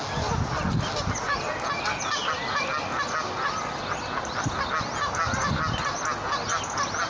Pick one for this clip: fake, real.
real